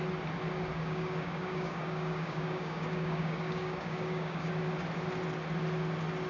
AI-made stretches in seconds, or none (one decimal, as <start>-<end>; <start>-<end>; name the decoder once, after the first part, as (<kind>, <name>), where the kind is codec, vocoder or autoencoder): 0.7-4.5 (codec, DAC)